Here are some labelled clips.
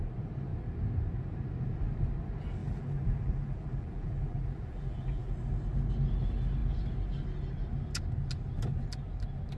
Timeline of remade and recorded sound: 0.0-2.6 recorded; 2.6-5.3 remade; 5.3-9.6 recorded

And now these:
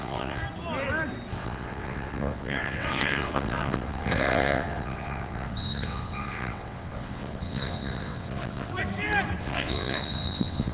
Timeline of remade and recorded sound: 0.0-0.4 remade; 0.4-1.3 recorded; 1.3-8.7 remade; 8.7-9.4 recorded; 9.4-10.7 remade

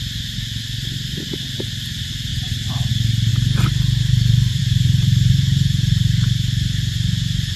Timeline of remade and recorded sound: 0.0-2.3 recorded; 2.3-2.9 remade; 2.9-3.3 recorded; 3.3-4.6 remade; 4.6-7.6 recorded

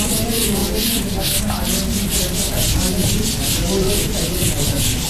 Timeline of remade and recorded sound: 0.0-5.1 recorded